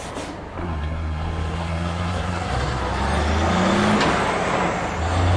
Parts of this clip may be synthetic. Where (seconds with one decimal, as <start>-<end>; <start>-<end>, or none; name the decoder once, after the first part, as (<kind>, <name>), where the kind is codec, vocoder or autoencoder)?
0.6-2.8 (codec, SNAC)